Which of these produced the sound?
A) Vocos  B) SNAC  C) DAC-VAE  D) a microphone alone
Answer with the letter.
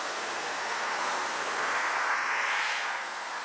B